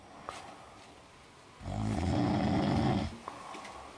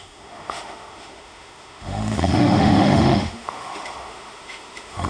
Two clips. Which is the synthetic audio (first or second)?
second